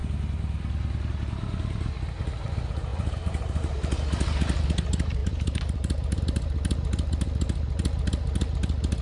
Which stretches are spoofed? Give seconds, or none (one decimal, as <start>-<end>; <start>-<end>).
2.9-3.7; 5.2-6.2